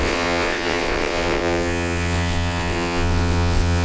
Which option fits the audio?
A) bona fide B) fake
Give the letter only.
B